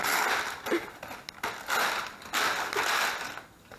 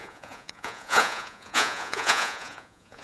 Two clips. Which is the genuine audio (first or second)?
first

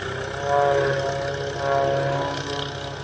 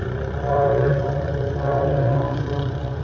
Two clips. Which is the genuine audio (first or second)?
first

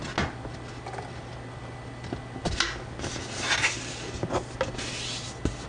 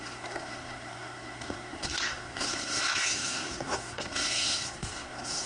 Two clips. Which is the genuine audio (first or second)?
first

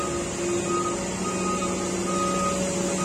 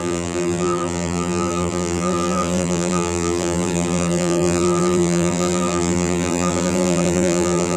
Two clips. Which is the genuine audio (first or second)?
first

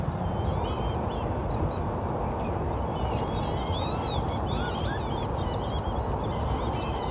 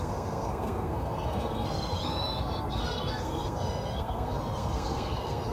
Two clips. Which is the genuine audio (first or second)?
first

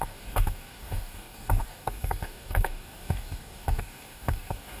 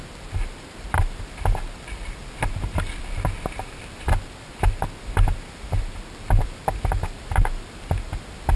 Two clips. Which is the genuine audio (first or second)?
second